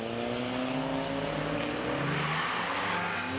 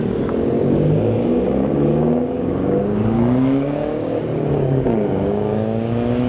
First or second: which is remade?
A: second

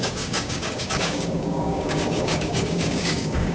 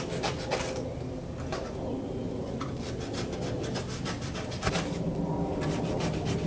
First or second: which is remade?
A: first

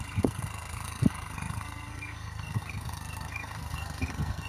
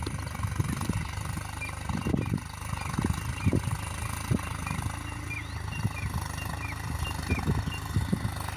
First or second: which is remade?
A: first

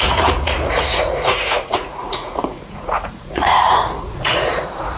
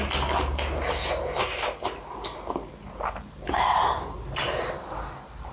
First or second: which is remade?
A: first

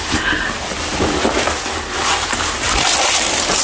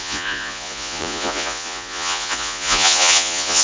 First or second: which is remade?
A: second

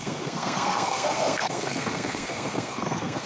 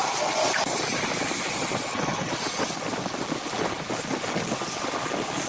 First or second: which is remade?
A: first